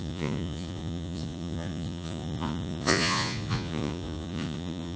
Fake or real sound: fake